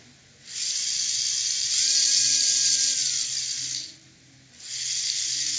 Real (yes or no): yes